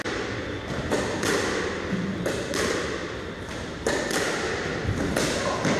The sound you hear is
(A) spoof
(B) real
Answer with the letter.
B